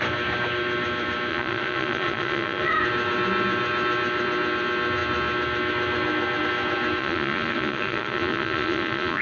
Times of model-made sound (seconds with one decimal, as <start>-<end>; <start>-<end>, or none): 1.3-2.7; 7.0-9.2